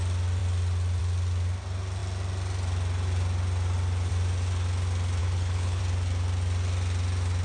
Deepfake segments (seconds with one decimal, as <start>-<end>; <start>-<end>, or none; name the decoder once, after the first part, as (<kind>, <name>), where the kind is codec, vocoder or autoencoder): 5.2-5.8 (codec, HILCodec)